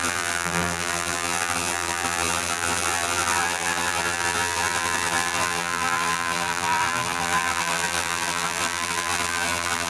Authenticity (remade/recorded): remade